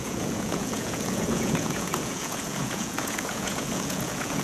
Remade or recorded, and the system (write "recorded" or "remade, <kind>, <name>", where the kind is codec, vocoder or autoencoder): remade, vocoder, Vocos